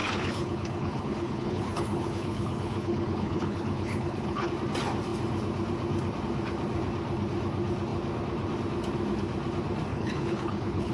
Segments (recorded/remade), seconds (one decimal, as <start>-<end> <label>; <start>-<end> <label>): 0.0-4.5 remade; 4.5-9.9 recorded; 9.9-10.9 remade